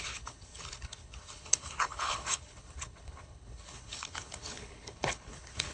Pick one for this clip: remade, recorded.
remade